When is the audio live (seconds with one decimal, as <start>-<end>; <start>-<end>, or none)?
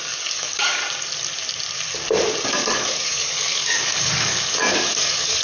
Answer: 0.8-2.5